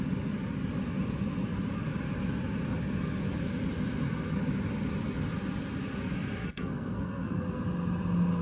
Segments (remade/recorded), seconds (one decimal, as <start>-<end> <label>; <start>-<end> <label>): 0.0-6.4 recorded; 6.4-7.6 remade; 7.6-8.4 recorded